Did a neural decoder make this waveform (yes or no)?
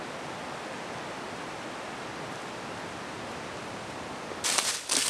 no